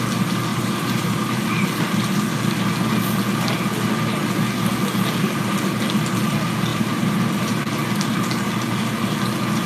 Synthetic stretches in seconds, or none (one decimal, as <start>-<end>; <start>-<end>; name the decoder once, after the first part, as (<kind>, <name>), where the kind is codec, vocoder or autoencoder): 0.5-1.4 (vocoder, BigVGAN v2); 6.7-7.5